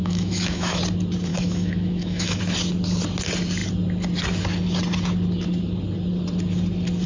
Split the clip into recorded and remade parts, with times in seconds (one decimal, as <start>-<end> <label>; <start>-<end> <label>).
0.0-0.8 remade; 0.8-1.3 recorded; 1.3-2.4 remade; 2.4-7.1 recorded